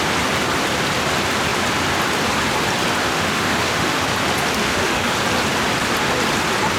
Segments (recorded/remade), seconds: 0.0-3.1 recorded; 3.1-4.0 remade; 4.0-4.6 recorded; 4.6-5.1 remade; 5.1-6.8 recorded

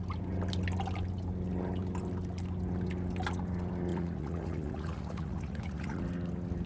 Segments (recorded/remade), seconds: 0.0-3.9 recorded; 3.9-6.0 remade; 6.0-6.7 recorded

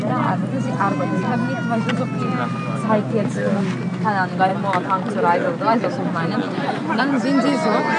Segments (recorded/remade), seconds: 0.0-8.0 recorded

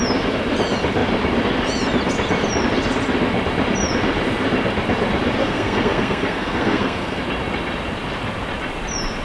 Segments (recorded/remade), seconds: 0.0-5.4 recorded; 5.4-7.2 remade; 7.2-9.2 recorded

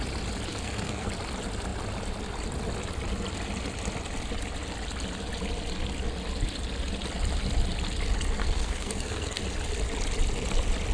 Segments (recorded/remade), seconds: 0.0-0.5 recorded; 0.5-1.1 remade; 1.1-8.4 recorded; 8.4-9.4 remade; 9.4-10.9 recorded